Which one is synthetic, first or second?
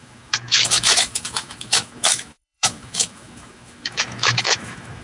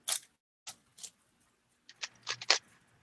first